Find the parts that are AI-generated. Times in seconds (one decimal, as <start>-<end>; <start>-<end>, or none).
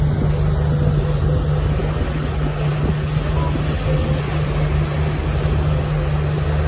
none